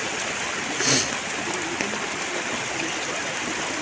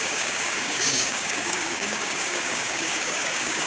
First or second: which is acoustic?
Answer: first